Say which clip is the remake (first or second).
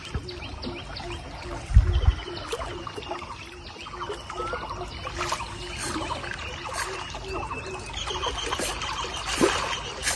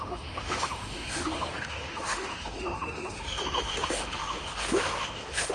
second